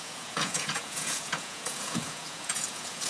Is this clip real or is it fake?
fake